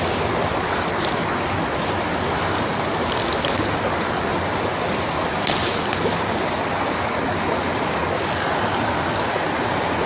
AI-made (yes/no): no